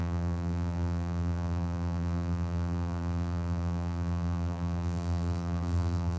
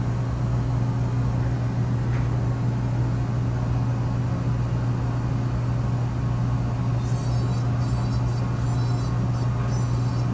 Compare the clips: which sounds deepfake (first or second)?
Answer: first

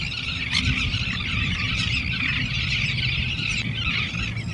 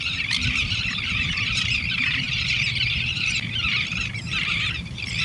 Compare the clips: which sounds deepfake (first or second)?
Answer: second